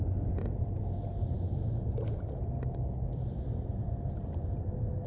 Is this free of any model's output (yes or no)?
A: yes